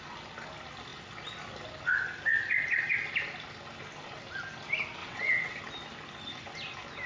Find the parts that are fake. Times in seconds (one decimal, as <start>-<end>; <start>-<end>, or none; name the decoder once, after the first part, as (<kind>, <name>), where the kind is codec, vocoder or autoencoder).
5.0-5.6 (vocoder, WaveNeXt)